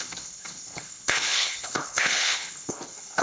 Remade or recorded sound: remade